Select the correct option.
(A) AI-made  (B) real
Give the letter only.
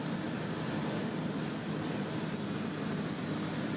B